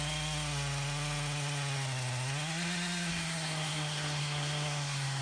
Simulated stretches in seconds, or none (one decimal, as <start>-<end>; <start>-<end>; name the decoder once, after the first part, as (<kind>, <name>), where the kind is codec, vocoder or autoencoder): 3.1-5.2 (codec, SNAC)